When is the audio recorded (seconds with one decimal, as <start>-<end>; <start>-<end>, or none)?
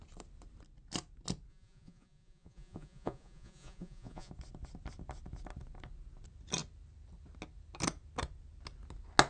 0.0-1.5; 4.3-9.3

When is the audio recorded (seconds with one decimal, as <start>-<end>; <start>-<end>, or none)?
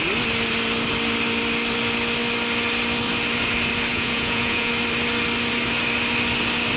0.0-3.9; 4.7-6.8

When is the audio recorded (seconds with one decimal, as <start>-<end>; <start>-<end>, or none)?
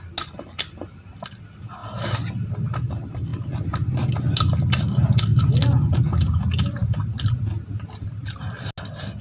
0.0-9.2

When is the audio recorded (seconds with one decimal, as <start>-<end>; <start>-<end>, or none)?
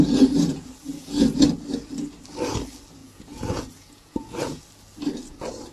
0.0-0.9; 1.4-3.0; 4.6-5.7